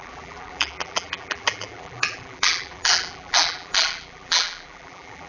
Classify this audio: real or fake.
fake